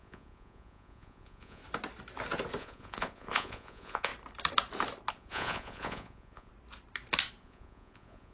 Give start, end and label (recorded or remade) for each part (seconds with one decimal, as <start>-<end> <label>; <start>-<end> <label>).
0.0-1.6 remade; 1.6-2.6 recorded; 2.6-4.1 remade; 4.1-5.1 recorded; 5.1-6.5 remade; 6.5-7.4 recorded; 7.4-8.3 remade